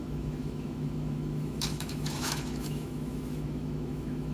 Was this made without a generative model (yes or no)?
no